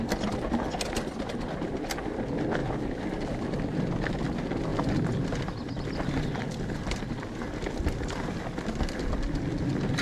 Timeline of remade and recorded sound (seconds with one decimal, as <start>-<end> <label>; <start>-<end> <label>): 0.0-10.0 recorded